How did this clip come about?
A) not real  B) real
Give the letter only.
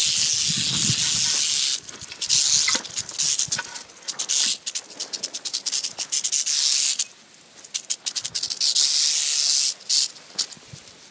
B